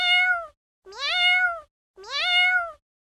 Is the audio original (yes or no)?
yes